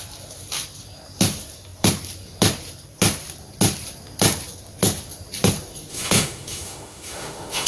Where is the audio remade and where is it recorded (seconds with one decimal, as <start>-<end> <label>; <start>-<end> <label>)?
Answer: 0.0-5.9 recorded; 5.9-7.7 remade